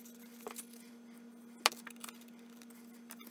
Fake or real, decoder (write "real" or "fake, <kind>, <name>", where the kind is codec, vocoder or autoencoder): real